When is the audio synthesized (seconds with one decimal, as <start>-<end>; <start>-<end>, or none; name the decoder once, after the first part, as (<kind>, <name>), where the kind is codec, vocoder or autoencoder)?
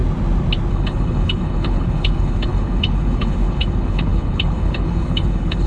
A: 0.7-5.7 (codec, HILCodec)